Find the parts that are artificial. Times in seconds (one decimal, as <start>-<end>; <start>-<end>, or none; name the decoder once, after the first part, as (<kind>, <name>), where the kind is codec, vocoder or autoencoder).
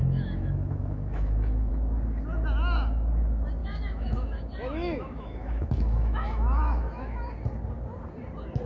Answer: 0.0-1.7 (autoencoder, DAC-VAE); 3.6-7.2